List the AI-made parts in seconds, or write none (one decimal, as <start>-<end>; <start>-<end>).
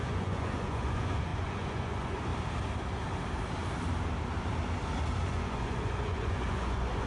0.0-2.3; 5.3-7.1